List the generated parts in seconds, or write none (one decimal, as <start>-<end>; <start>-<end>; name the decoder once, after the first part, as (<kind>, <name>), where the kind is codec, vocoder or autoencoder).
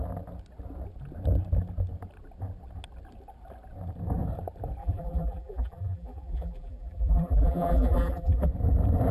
4.8-8.5 (vocoder, BigVGAN v2)